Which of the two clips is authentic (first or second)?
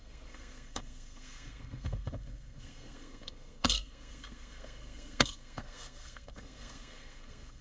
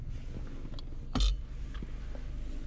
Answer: second